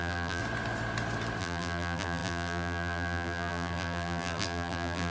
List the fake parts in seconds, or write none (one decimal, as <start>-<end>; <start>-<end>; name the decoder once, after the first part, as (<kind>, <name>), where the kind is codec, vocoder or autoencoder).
0.0-0.4 (vocoder, BigVGAN v2); 1.4-5.1